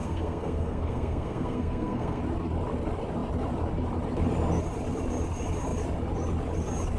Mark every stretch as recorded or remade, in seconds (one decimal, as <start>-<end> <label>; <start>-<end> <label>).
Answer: 0.0-2.2 remade; 2.2-7.0 recorded